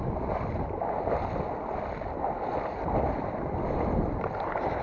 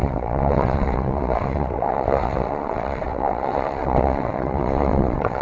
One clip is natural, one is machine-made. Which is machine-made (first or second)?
second